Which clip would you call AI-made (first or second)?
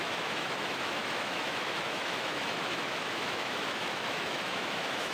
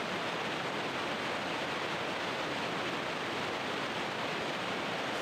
first